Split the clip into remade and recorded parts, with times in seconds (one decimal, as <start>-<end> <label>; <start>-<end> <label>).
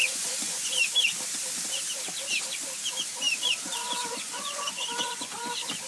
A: 0.0-0.8 remade; 0.8-3.8 recorded; 3.8-5.3 remade; 5.3-5.9 recorded